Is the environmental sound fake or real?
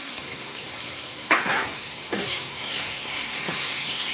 fake